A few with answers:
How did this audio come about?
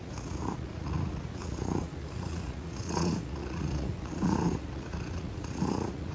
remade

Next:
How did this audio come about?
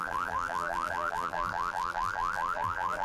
remade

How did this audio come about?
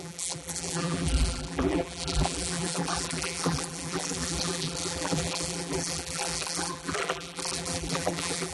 remade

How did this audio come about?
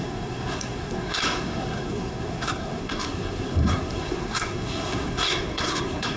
remade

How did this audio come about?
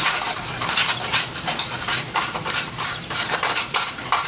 remade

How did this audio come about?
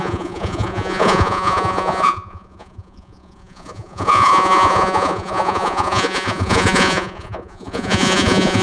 remade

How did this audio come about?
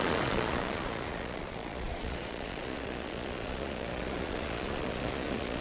remade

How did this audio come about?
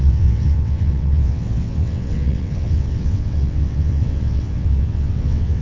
remade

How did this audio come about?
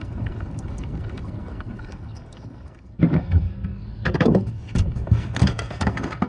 remade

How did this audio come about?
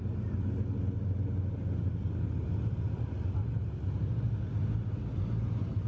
recorded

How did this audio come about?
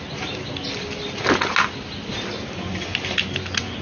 recorded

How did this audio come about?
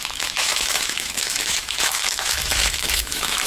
remade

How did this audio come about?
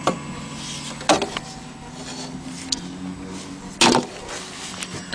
recorded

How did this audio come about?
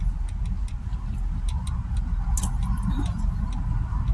recorded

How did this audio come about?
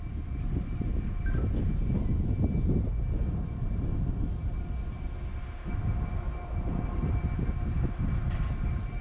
recorded